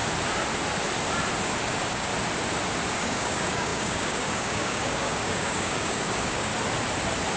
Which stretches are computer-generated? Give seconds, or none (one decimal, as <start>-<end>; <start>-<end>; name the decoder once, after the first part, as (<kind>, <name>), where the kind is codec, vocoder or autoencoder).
1.6-2.1 (codec, DAC); 2.9-6.5